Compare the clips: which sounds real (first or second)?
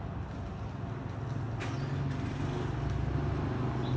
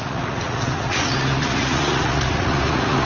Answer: first